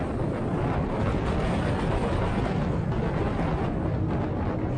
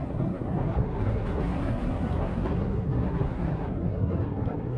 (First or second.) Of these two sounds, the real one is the first